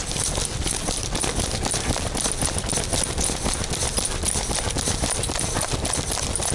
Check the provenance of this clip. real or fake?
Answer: real